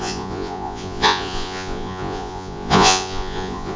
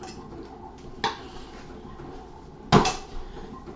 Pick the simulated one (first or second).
first